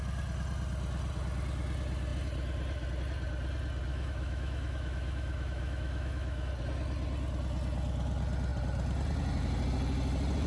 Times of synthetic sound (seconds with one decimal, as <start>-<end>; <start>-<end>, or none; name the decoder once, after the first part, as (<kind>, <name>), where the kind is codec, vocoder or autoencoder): 3.9-6.5 (autoencoder, DAC-VAE)